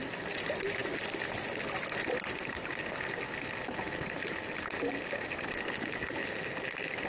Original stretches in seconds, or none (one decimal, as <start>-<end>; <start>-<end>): 0.0-7.1